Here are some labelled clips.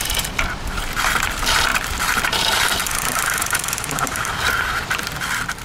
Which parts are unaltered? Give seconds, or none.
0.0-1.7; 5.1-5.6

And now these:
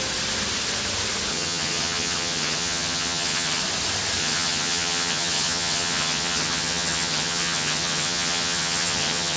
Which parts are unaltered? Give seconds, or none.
0.0-1.3; 3.6-4.2

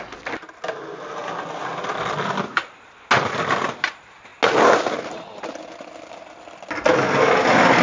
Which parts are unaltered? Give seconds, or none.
0.0-7.8

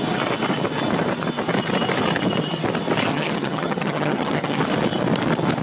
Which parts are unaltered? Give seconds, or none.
0.0-3.1; 4.6-5.6

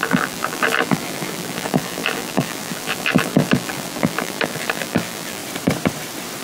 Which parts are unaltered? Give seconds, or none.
5.4-6.4

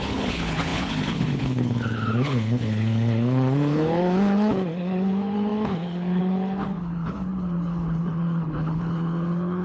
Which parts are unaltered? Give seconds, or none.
none